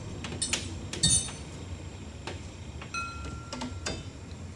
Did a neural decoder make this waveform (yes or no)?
no